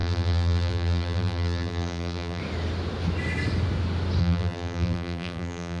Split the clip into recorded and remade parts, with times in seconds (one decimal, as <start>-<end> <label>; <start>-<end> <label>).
0.0-2.4 remade; 2.4-4.2 recorded; 4.2-5.8 remade